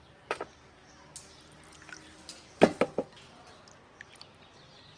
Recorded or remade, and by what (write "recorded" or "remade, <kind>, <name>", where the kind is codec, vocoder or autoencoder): recorded